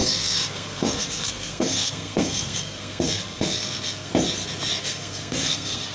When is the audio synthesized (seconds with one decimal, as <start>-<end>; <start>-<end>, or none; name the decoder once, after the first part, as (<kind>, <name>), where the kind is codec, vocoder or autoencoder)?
0.0-4.1 (codec, SNAC); 4.8-5.9